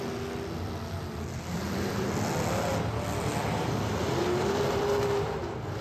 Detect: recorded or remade recorded